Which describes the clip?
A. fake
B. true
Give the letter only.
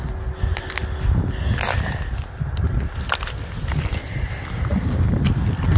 B